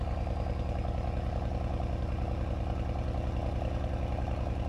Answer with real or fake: real